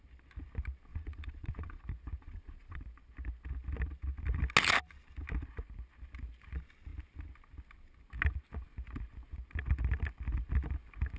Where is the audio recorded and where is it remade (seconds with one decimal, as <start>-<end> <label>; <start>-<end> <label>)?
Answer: 0.0-0.9 recorded; 0.9-1.8 remade; 1.8-2.2 recorded; 2.2-2.8 remade; 2.8-11.2 recorded